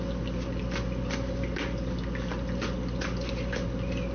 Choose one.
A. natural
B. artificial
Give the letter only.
A